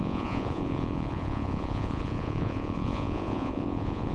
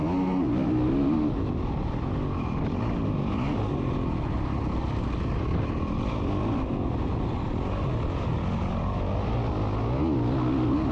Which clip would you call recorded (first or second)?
second